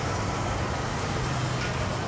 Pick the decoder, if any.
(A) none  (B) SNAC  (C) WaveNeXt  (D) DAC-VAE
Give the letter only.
A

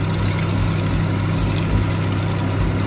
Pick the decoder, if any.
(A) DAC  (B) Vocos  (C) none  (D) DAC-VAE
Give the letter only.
C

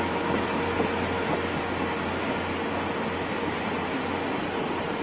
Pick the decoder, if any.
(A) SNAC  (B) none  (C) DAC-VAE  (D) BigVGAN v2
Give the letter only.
B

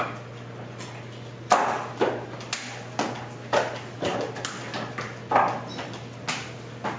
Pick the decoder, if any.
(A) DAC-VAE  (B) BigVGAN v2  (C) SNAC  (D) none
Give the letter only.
D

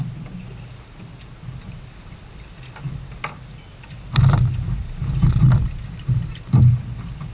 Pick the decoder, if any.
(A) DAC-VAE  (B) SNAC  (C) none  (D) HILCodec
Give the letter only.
C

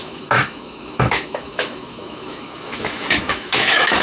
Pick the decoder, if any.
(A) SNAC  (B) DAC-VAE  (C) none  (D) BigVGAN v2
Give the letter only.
B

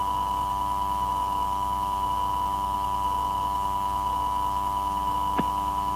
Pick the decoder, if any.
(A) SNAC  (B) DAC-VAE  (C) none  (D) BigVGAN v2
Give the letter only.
B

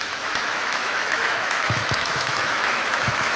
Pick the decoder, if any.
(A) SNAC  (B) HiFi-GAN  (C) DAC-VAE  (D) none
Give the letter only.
C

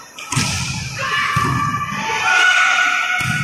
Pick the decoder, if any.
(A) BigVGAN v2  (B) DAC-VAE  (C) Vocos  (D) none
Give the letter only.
D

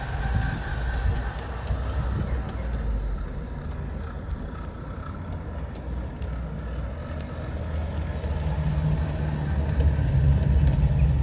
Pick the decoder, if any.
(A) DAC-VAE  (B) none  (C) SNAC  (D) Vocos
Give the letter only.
B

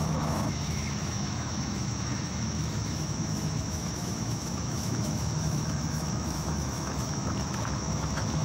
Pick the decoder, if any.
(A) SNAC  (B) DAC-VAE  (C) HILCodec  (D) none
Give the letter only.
B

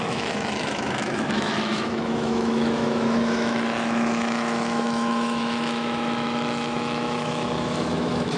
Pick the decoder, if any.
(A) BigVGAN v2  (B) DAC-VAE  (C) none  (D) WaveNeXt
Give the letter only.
B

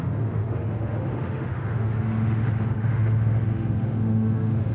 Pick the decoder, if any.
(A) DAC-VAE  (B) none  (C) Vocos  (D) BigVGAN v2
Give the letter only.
A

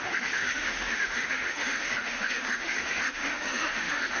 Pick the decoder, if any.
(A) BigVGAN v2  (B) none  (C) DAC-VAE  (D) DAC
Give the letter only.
C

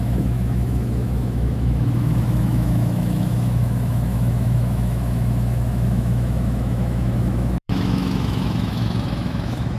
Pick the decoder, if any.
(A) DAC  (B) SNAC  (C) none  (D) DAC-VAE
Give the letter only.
D